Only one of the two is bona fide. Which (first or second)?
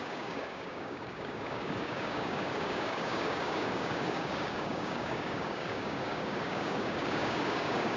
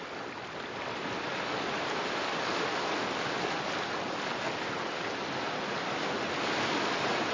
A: second